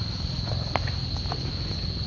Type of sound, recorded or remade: recorded